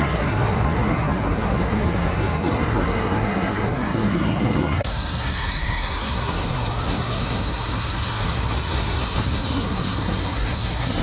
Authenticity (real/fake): fake